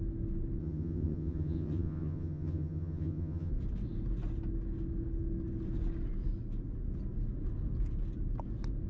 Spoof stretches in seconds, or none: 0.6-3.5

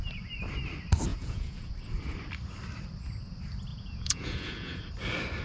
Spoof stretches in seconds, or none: 1.1-1.7; 3.7-4.8

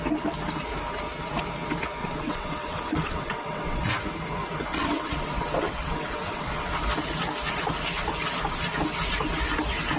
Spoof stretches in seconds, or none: 2.0-3.9; 4.7-6.7

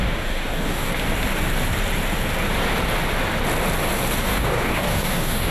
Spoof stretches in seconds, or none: 0.0-0.9; 4.2-5.5